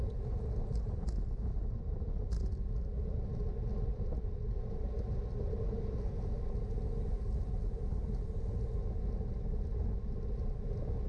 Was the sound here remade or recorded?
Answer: recorded